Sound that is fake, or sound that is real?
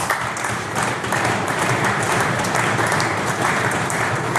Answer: fake